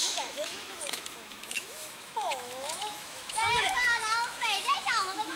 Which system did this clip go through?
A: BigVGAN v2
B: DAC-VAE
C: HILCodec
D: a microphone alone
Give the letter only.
B